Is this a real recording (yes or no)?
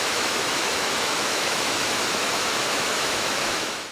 no